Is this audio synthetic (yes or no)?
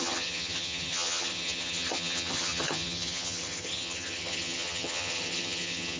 yes